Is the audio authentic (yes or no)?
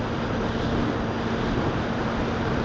yes